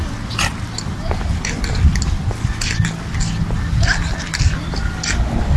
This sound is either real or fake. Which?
real